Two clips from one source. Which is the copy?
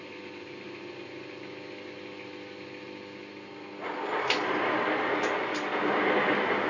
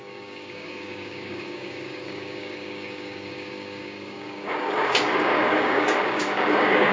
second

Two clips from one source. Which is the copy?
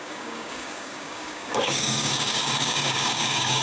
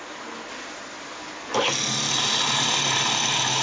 first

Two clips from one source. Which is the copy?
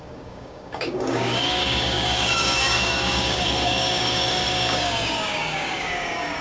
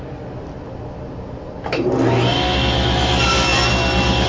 first